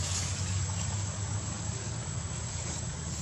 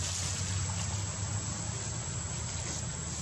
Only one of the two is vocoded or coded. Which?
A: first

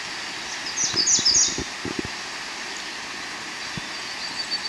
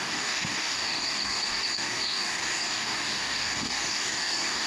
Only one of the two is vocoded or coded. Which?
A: second